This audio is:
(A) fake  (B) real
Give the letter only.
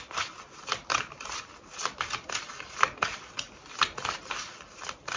B